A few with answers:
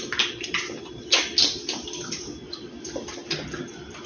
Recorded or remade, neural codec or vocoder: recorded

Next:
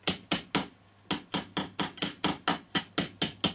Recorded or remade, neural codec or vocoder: recorded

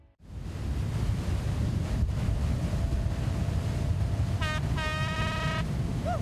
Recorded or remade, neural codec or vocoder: recorded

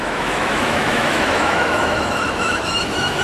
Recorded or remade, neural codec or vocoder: remade, autoencoder, DAC-VAE